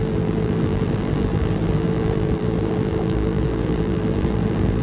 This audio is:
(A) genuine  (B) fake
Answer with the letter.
B